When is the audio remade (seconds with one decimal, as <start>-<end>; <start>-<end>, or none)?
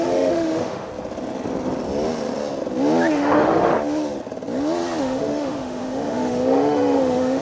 0.0-0.9; 3.1-3.7; 5.0-7.4